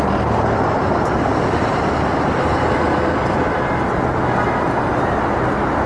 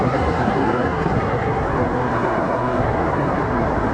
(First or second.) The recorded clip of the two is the first